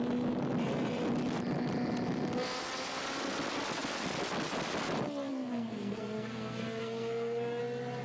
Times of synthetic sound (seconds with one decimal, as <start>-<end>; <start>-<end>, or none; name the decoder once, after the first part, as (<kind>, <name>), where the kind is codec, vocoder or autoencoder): 5.3-7.6 (codec, SNAC)